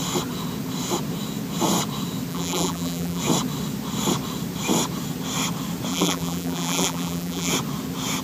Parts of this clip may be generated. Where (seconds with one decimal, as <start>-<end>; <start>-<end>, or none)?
2.3-3.2; 5.9-7.5

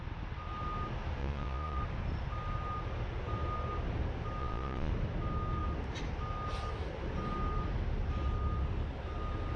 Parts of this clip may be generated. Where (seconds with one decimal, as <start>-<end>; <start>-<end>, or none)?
1.2-1.8; 4.4-4.9

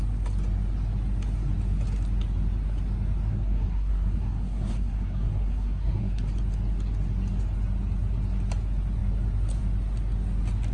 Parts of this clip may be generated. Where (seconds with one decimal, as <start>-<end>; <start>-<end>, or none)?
3.3-6.2

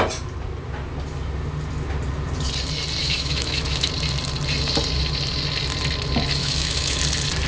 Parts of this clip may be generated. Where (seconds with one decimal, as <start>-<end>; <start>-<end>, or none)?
3.0-3.9; 6.4-7.0

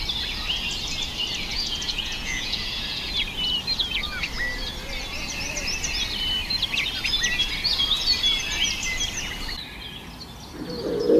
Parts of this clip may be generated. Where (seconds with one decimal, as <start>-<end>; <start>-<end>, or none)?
1.5-3.0

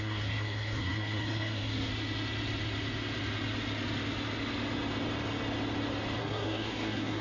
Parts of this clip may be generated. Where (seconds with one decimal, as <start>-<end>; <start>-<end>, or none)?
0.0-1.9; 6.2-7.2

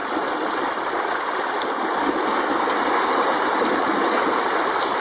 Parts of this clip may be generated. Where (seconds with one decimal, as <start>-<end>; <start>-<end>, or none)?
none

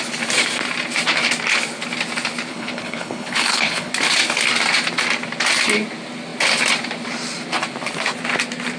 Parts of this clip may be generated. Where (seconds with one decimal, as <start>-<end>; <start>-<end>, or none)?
2.5-3.9